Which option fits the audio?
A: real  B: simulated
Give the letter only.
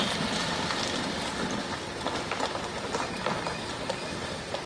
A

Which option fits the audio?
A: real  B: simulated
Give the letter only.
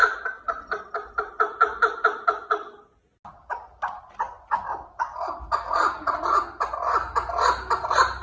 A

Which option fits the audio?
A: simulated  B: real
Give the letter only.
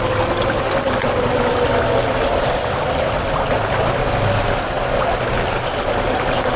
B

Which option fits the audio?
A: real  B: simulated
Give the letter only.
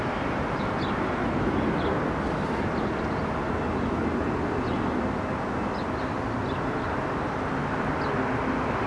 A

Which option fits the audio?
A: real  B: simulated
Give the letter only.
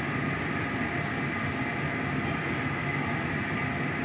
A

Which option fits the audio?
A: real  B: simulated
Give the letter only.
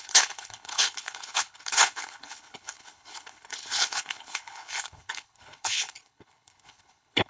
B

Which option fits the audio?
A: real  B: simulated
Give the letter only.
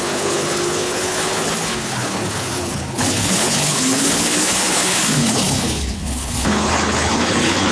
B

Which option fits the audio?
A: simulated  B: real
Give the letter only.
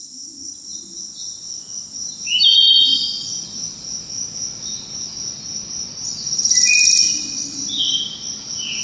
B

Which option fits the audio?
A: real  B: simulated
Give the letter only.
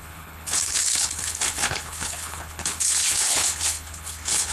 B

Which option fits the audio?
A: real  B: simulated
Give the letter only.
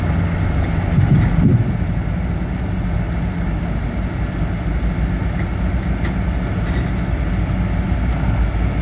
A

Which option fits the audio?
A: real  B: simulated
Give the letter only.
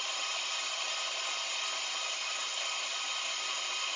A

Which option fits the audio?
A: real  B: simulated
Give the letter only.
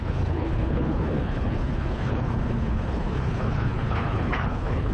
B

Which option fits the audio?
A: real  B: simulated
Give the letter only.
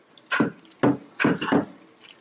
A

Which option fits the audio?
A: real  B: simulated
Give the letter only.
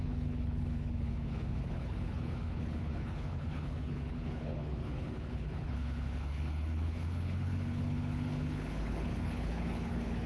B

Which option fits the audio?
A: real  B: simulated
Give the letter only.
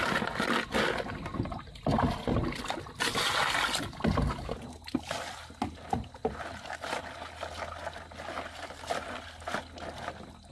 A